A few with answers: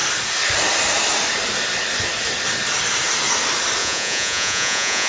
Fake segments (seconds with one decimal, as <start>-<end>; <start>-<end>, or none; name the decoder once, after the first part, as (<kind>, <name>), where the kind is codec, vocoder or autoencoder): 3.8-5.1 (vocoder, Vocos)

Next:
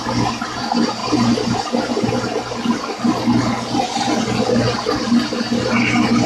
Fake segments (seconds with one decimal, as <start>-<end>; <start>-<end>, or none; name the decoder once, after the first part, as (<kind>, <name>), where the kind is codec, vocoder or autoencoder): none

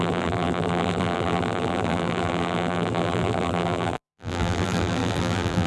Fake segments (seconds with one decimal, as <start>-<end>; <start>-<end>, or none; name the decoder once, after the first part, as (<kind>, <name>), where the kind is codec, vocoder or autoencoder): 0.0-5.7 (vocoder, BigVGAN v2)

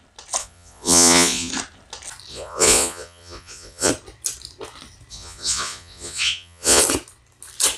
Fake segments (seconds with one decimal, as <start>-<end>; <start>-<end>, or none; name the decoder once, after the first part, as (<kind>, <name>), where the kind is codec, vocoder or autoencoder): 0.4-1.5 (vocoder, Vocos); 2.3-3.9; 5.1-6.8

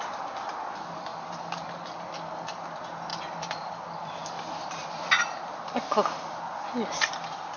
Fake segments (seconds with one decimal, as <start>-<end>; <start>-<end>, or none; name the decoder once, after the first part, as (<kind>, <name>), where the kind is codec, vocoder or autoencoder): none

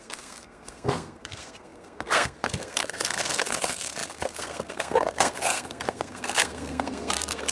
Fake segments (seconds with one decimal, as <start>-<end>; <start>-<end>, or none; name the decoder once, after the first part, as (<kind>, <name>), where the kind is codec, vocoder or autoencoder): 0.0-7.5 (codec, SNAC)